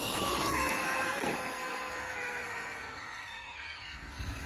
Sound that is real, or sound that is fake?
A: fake